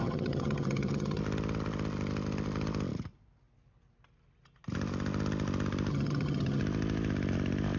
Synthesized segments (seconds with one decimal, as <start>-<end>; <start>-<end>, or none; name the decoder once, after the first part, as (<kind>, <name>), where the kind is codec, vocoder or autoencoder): 0.0-1.2 (vocoder, HiFi-GAN); 5.9-6.6